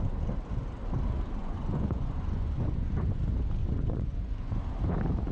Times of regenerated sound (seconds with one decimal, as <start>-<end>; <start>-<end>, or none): 1.4-3.2; 3.6-4.5

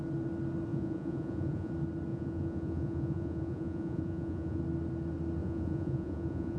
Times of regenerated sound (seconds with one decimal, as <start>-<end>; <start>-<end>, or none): 0.7-1.7; 2.1-4.6; 5.4-6.6

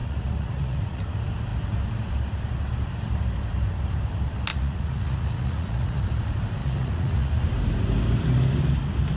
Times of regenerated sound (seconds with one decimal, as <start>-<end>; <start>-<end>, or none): 0.0-1.1; 4.5-6.1; 6.6-7.3

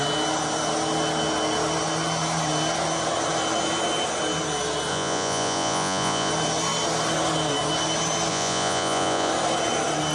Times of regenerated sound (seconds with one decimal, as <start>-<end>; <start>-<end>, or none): 4.9-6.3; 8.3-9.3